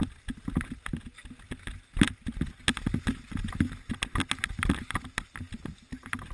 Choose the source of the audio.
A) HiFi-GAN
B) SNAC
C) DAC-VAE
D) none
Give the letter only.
D